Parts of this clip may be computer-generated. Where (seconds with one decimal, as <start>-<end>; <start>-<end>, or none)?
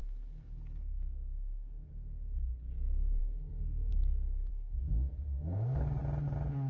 0.0-1.9; 3.2-3.9; 4.5-6.0